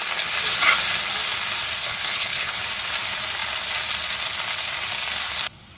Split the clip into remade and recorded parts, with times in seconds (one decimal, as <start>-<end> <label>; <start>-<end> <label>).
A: 0.0-1.8 recorded; 1.8-2.6 remade; 2.6-5.8 recorded